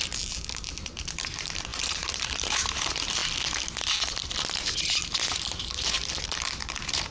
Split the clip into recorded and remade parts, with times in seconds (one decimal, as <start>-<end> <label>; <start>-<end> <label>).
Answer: 0.0-3.2 remade; 3.2-4.4 recorded; 4.4-7.1 remade